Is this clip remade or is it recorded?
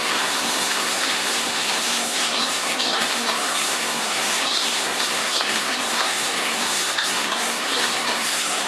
remade